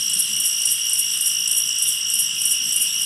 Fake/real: real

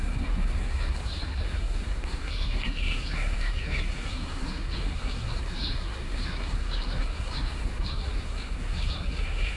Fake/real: fake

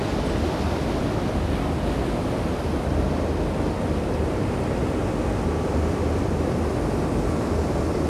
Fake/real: real